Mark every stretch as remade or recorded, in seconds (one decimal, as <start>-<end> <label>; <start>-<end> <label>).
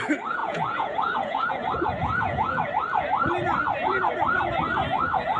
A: 0.0-0.4 recorded; 0.4-1.5 remade; 1.5-2.0 recorded; 2.0-2.6 remade; 2.6-5.4 recorded